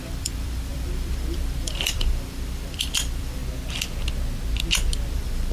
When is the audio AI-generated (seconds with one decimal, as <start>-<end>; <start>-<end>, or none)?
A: 0.0-3.4; 5.1-5.5